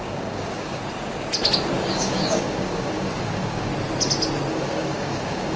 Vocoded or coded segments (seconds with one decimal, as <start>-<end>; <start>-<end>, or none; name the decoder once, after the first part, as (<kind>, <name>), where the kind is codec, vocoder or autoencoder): 0.0-0.8 (codec, DAC); 1.9-3.7; 4.5-5.6